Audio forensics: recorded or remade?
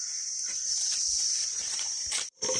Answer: recorded